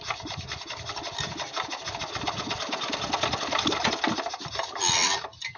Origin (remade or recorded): recorded